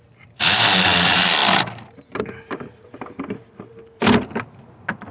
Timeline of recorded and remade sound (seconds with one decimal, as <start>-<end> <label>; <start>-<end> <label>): 0.0-5.1 recorded

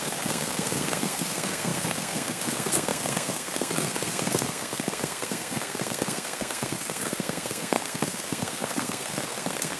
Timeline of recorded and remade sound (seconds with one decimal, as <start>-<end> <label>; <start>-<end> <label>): 0.0-9.8 remade